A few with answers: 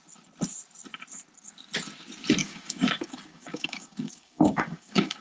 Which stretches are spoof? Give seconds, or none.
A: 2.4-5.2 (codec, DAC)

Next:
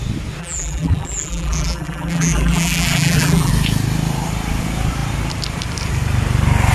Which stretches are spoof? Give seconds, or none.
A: 0.4-3.5 (vocoder, BigVGAN v2)

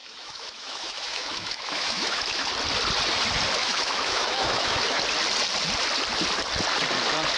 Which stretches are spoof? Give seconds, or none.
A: 0.0-2.5 (autoencoder, DAC-VAE); 3.6-5.0

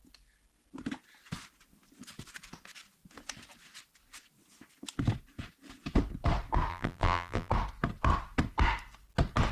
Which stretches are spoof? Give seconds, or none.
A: 6.7-7.5 (vocoder, BigVGAN v2)

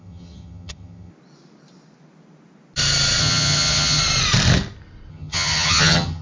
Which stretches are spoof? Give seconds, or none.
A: 0.0-1.1 (vocoder, HiFi-GAN); 3.2-4.0; 5.1-6.2

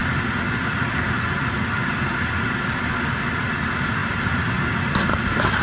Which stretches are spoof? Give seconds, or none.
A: none

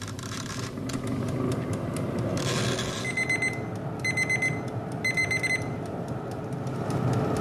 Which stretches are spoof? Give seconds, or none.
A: 0.0-0.9 (vocoder, BigVGAN v2); 5.2-6.4

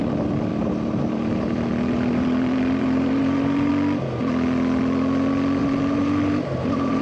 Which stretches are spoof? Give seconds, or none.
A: 0.5-3.7 (vocoder, BigVGAN v2); 5.6-7.0